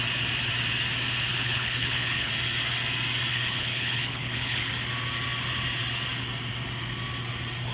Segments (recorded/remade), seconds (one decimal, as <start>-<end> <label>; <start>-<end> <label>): 0.0-1.3 recorded; 1.3-2.3 remade; 2.3-3.3 recorded; 3.3-4.7 remade; 4.7-7.7 recorded

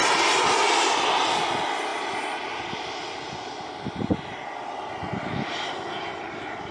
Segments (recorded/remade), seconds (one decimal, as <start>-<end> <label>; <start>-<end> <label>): 0.0-6.7 recorded

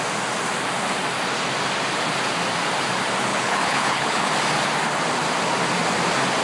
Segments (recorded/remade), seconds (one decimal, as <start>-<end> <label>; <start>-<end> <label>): 0.0-3.3 recorded; 3.3-4.3 remade; 4.3-6.4 recorded

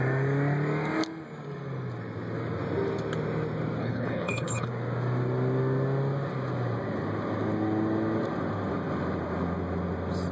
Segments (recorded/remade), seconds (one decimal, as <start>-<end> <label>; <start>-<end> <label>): 0.0-3.8 recorded; 3.8-4.7 remade; 4.7-10.3 recorded

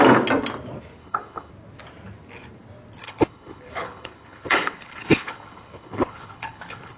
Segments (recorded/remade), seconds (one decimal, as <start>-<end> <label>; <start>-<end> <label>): 0.0-1.0 recorded; 1.0-1.5 remade; 1.5-3.0 recorded; 3.0-7.0 remade

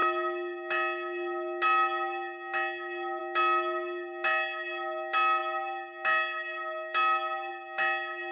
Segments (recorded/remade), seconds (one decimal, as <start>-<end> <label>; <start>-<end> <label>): 0.0-8.3 recorded

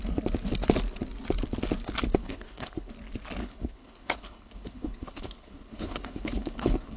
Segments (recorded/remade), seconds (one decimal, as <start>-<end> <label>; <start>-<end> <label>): 0.0-2.2 recorded; 2.2-2.9 remade; 2.9-3.4 recorded; 3.4-7.0 remade